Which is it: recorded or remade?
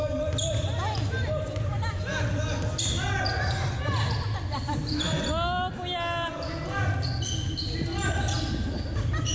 recorded